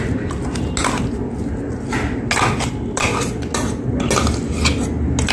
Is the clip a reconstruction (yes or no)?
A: no